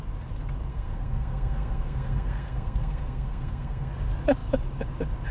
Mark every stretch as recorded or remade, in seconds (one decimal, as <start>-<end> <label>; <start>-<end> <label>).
0.0-0.7 recorded; 0.7-3.9 remade; 3.9-5.3 recorded